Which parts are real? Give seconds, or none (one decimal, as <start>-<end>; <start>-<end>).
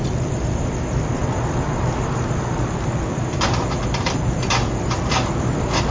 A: 0.0-5.9